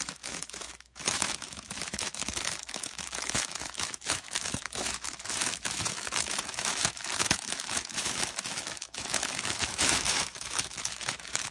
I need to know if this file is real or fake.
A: fake